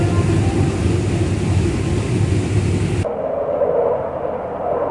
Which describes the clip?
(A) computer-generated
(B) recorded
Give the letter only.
B